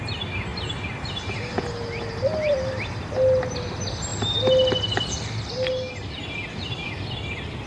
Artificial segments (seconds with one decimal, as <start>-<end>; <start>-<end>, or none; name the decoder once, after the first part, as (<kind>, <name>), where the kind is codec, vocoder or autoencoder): none